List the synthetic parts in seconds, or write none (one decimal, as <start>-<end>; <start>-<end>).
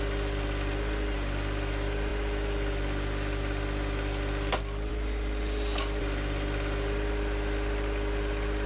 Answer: none